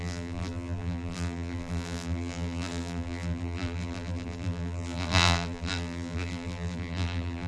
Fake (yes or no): yes